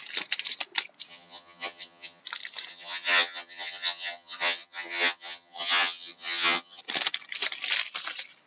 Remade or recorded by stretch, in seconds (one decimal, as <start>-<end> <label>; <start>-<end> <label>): 0.0-1.1 recorded; 1.1-2.2 remade; 2.2-2.7 recorded; 2.7-6.8 remade; 6.8-8.5 recorded